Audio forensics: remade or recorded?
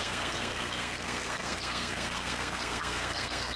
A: remade